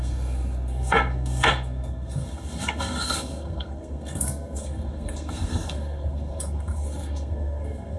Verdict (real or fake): fake